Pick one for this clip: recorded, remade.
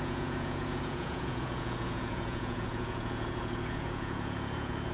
remade